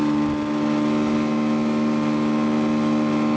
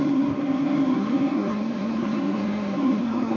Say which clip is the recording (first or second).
first